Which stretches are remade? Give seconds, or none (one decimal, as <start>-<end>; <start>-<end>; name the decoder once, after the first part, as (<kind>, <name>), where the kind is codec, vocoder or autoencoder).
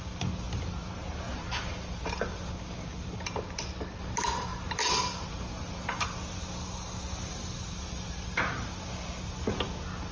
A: 1.3-1.9 (vocoder, BigVGAN v2)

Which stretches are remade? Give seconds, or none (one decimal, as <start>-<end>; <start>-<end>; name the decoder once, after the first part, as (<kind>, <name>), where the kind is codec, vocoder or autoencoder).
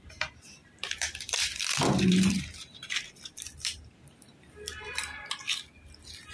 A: 0.6-4.3 (vocoder, BigVGAN v2)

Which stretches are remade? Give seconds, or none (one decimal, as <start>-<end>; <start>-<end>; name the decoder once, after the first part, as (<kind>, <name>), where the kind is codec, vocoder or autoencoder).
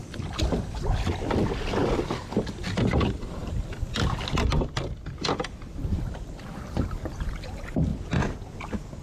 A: 0.0-1.8 (vocoder, BigVGAN v2)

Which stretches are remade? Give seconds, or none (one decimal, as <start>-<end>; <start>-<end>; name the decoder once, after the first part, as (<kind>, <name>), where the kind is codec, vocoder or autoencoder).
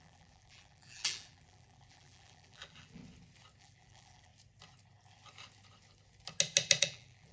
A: 0.0-3.0 (vocoder, BigVGAN v2); 3.6-4.3; 6.8-7.3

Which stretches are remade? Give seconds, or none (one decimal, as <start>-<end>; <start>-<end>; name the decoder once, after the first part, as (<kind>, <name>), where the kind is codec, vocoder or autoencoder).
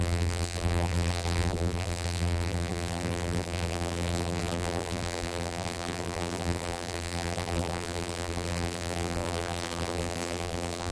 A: 0.0-10.9 (vocoder, BigVGAN v2)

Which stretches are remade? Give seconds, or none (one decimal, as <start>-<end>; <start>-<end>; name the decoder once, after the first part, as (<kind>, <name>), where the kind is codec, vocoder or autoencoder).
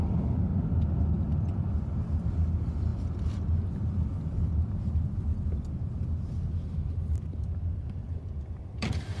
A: 0.0-0.5 (vocoder, BigVGAN v2); 1.2-2.9; 5.6-9.2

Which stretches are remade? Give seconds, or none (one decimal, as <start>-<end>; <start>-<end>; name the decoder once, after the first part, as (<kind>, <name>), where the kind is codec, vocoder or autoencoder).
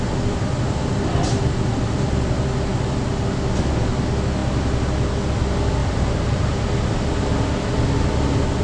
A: 5.8-6.6 (vocoder, BigVGAN v2)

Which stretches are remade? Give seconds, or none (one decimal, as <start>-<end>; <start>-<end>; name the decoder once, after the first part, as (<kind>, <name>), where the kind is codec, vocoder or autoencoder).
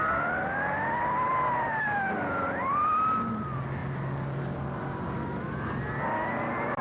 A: none